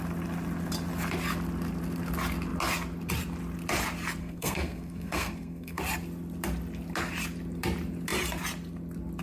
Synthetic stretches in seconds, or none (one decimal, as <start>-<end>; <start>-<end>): 4.2-5.8